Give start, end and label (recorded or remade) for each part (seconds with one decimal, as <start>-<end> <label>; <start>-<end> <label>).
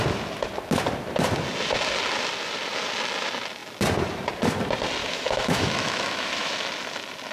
0.0-5.0 recorded; 5.0-6.7 remade; 6.7-7.3 recorded